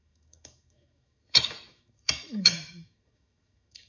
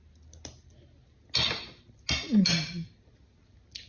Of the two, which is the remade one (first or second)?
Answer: first